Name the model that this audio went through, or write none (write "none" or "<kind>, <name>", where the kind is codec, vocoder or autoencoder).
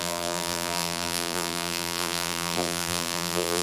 vocoder, BigVGAN v2